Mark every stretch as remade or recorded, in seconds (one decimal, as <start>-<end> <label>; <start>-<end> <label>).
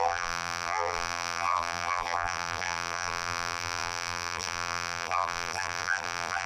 0.0-6.5 remade